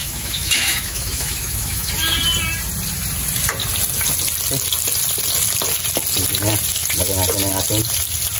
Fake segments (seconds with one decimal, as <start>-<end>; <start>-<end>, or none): 0.0-1.9